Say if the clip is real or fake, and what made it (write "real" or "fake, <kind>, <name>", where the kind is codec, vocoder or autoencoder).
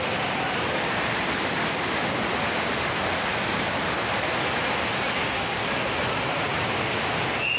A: real